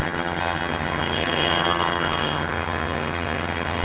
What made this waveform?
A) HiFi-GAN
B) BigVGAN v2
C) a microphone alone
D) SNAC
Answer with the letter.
A